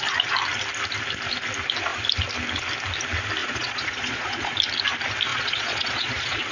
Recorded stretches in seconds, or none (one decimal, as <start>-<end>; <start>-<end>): 0.0-3.4; 4.5-5.3